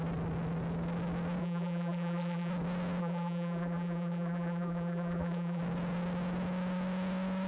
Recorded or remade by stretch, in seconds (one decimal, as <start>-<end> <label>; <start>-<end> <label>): 0.0-1.4 recorded; 1.4-2.5 remade; 2.5-3.0 recorded; 3.0-5.6 remade; 5.6-7.5 recorded